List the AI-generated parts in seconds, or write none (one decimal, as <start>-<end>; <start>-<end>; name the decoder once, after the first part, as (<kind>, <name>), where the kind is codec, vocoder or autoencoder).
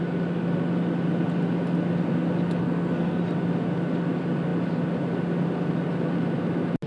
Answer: 2.6-3.2 (codec, SNAC)